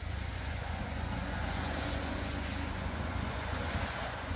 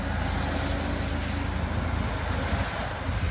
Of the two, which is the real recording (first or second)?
second